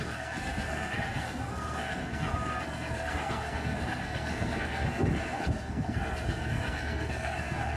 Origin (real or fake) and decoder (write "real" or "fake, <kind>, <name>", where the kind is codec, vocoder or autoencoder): fake, codec, SNAC